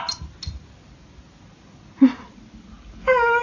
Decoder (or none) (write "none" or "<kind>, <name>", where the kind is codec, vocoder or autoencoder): none